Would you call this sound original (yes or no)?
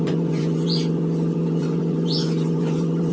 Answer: no